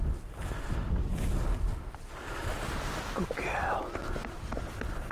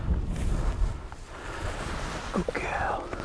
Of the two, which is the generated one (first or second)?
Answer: second